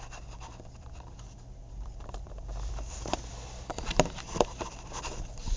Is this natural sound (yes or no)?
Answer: no